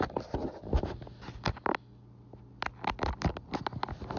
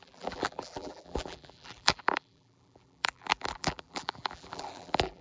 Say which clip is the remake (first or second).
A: second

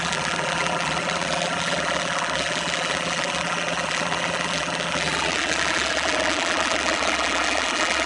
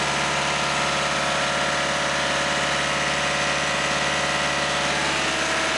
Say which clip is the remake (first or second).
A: first